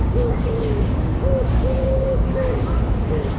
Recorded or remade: remade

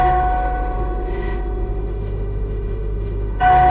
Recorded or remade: remade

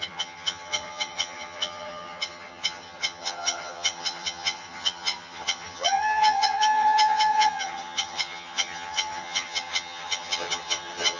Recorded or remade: remade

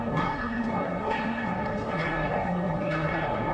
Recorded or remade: remade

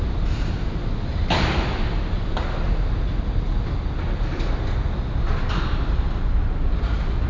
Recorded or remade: recorded